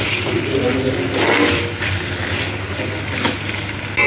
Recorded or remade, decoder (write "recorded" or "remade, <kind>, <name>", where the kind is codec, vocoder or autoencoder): recorded